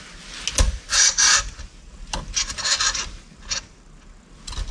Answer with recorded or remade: recorded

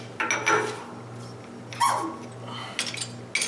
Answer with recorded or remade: recorded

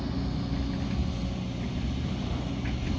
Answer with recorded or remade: recorded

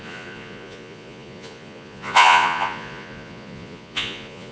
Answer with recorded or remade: remade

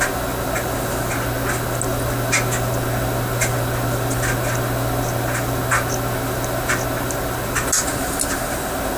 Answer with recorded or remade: recorded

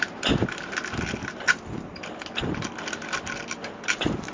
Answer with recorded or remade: recorded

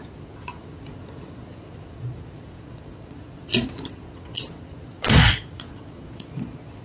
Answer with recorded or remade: remade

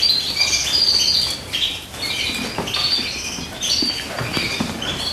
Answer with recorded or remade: recorded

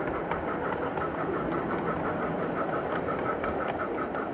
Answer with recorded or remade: recorded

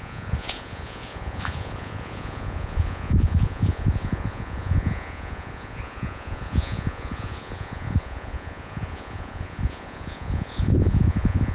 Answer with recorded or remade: remade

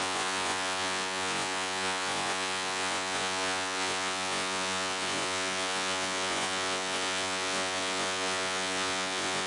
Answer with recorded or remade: remade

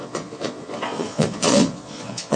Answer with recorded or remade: remade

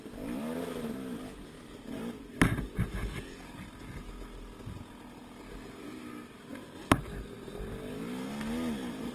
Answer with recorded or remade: recorded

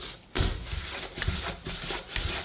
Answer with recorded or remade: recorded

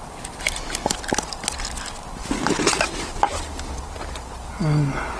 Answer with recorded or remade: recorded